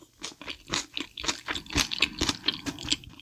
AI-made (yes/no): no